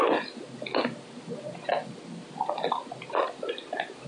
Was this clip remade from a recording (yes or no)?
no